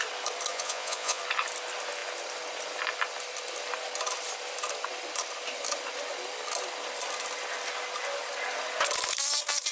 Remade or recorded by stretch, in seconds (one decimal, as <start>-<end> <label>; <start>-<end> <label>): 0.0-0.5 recorded; 0.5-1.2 remade; 1.2-9.7 recorded